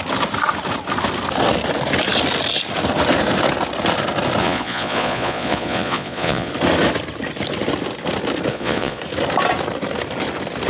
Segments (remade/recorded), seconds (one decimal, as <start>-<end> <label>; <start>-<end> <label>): 0.0-4.4 recorded; 4.4-6.5 remade; 6.5-8.5 recorded; 8.5-9.0 remade; 9.0-10.7 recorded